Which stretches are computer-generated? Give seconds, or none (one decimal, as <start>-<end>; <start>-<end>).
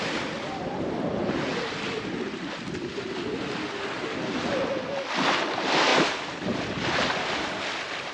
0.0-1.5; 5.5-8.1